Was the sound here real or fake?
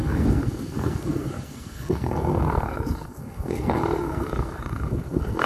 fake